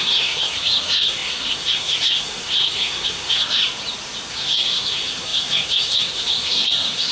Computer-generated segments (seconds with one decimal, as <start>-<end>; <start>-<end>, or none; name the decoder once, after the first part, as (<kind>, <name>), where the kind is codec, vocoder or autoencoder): 0.0-3.6 (codec, SNAC); 4.3-7.1